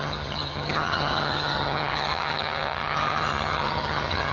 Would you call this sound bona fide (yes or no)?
no